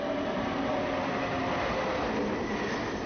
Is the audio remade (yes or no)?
no